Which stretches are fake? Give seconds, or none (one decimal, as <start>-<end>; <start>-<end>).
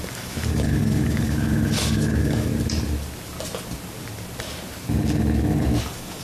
0.0-2.5; 5.8-6.2